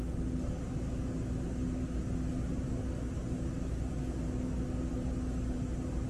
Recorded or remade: recorded